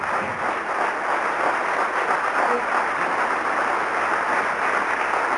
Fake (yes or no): no